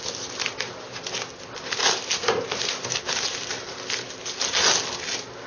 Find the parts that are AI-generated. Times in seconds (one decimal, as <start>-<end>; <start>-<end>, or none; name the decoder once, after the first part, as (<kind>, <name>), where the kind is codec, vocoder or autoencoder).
none